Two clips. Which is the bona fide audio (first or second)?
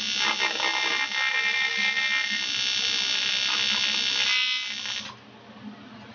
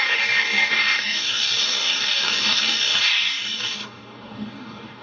first